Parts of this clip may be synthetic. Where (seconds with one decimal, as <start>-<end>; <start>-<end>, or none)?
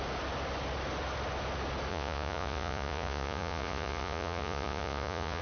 1.9-5.4